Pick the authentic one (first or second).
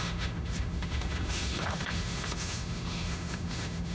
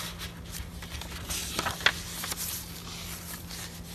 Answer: second